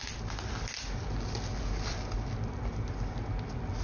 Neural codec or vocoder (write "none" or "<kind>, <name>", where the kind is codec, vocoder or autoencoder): none